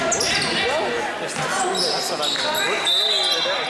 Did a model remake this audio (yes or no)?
no